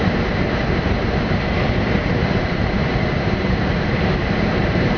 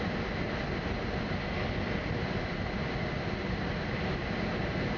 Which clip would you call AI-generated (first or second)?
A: first